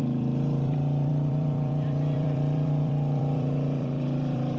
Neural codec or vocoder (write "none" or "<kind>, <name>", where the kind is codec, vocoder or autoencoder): vocoder, BigVGAN v2